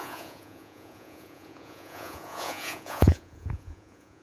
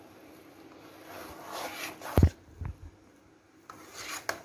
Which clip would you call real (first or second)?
second